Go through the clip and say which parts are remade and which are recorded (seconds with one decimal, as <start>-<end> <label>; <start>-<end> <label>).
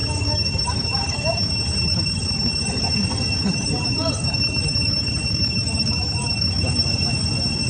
0.0-2.8 remade; 2.8-3.4 recorded; 3.4-6.8 remade; 6.8-7.7 recorded